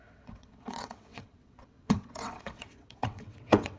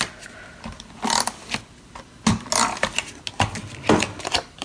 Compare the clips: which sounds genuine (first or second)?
second